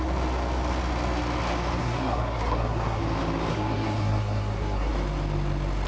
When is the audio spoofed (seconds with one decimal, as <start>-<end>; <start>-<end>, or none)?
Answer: 1.8-3.0; 3.5-4.9